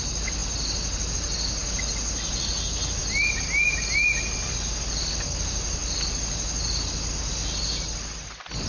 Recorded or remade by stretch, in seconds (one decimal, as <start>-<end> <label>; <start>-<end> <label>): 0.0-8.7 recorded